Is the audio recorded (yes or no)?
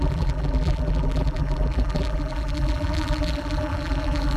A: no